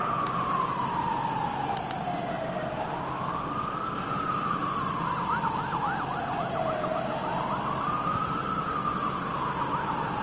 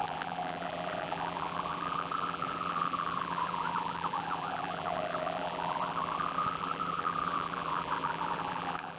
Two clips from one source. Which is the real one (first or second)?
first